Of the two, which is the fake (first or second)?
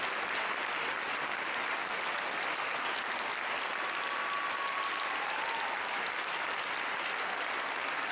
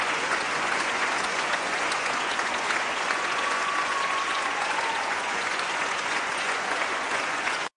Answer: second